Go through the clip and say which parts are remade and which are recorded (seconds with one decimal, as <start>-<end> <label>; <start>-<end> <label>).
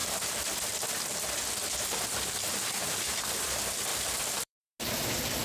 0.0-3.9 recorded; 3.9-4.6 remade; 4.6-5.4 recorded